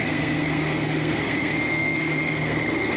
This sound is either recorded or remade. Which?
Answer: remade